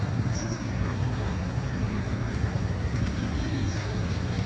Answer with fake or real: fake